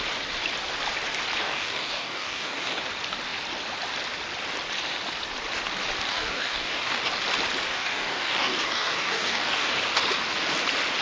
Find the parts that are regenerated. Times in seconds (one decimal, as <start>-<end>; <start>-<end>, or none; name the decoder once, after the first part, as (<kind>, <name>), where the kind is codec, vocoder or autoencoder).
1.4-2.8 (codec, DAC); 6.1-7.1; 7.7-9.7